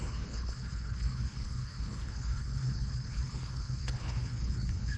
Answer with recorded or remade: remade